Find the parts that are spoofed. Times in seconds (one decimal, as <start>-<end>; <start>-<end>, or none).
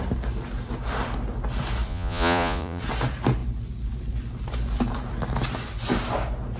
1.9-2.8